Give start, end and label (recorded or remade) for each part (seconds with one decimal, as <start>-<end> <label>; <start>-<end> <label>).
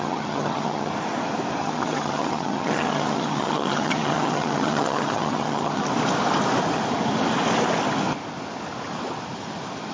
0.0-0.9 remade; 0.9-1.6 recorded; 1.6-5.9 remade; 5.9-9.9 recorded